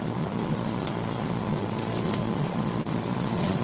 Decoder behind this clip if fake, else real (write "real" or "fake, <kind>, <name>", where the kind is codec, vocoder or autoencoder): fake, vocoder, Vocos